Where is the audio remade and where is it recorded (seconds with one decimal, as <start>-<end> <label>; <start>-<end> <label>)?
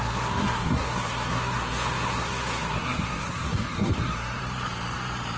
0.0-4.4 remade; 4.4-5.4 recorded